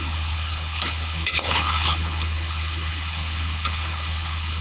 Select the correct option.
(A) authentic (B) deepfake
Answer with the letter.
B